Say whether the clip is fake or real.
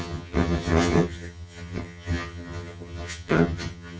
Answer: fake